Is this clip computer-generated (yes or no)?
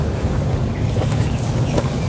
yes